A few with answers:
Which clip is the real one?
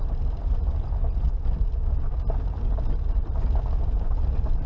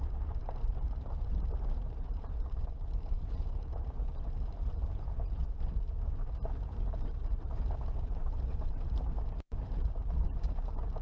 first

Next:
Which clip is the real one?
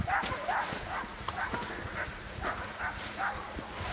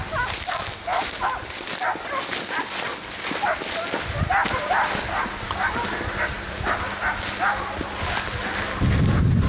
second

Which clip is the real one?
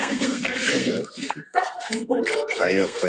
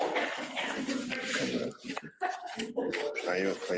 second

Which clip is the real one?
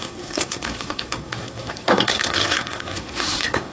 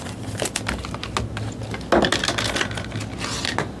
second